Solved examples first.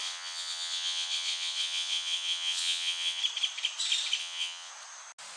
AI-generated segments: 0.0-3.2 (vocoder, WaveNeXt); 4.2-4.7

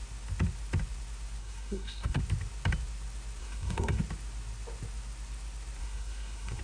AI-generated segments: 1.4-2.2 (codec, SNAC); 3.4-4.0; 5.8-6.6

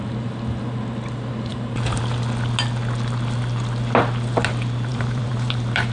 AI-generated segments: 1.5-2.0 (vocoder, BigVGAN v2); 4.9-5.9

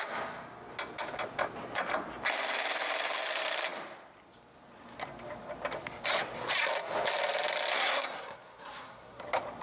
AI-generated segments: 7.7-9.2 (codec, SNAC)